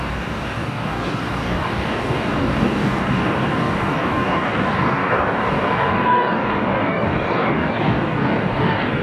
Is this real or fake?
fake